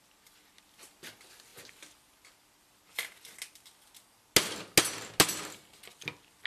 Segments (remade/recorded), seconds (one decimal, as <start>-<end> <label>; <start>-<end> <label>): 0.0-6.5 recorded